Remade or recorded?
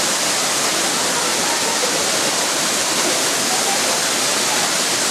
recorded